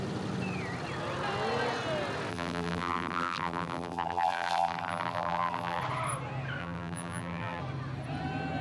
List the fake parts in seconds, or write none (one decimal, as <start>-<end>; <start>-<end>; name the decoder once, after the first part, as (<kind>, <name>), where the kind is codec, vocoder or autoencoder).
2.3-5.8 (vocoder, BigVGAN v2); 6.6-7.6